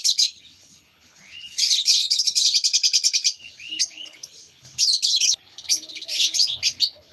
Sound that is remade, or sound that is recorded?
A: remade